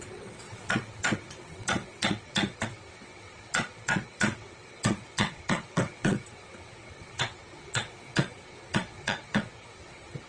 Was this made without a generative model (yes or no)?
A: no